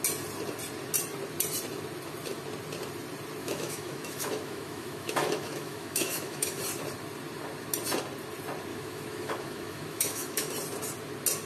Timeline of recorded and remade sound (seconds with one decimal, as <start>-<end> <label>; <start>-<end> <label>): 0.0-3.4 recorded; 3.4-6.6 remade; 6.6-8.7 recorded; 8.7-10.5 remade; 10.5-11.5 recorded